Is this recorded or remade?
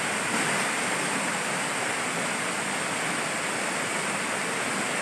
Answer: recorded